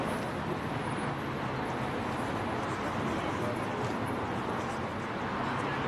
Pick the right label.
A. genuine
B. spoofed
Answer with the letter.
A